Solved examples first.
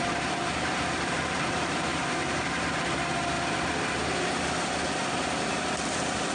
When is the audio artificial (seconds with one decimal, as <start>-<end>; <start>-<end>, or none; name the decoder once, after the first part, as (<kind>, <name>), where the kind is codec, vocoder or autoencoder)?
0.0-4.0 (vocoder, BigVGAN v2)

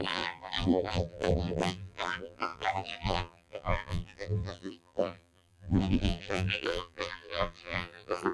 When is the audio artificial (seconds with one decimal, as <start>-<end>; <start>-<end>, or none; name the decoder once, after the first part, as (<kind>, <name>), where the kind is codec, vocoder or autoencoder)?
0.0-8.3 (vocoder, BigVGAN v2)

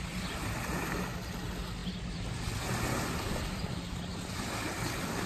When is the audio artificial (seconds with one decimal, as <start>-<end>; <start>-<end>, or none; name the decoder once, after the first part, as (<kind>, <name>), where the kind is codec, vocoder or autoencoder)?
4.1-4.7 (vocoder, BigVGAN v2)

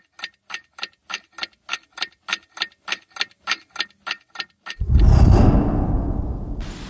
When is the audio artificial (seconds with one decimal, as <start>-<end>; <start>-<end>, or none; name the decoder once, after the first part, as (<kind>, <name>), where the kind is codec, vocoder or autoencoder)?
none